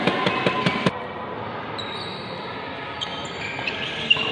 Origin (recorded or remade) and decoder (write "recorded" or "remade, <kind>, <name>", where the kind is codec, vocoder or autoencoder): recorded